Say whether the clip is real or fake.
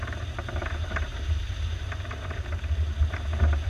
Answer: fake